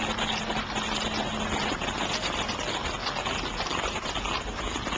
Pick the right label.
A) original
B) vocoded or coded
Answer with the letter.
A